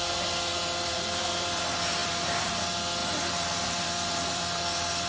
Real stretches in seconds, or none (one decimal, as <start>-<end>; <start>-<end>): 0.0-0.5; 1.6-2.0; 2.5-3.0